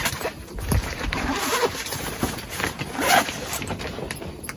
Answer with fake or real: fake